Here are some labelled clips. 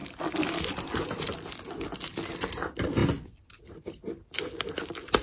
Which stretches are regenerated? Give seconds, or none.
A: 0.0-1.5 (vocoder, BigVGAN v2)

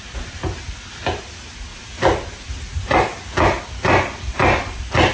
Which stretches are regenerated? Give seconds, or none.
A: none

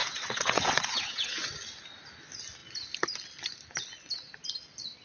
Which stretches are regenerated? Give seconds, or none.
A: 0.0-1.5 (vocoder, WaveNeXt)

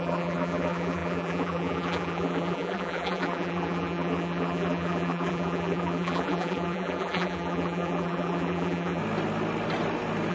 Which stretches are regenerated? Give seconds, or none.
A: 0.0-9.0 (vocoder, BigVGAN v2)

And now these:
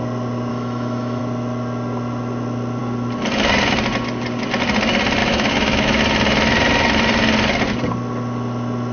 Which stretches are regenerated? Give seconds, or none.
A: 0.5-1.2 (autoencoder, DAC-VAE); 5.2-6.0

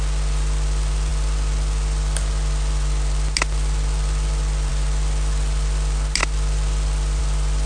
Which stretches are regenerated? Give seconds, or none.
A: none

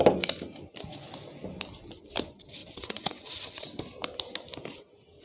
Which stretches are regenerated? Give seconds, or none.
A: 2.6-3.8 (vocoder, WaveNeXt)